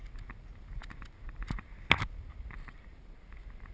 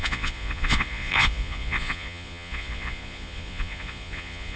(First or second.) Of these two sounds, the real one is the first